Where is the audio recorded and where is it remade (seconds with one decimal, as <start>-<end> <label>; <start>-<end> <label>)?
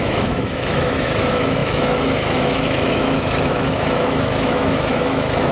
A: 0.0-5.5 remade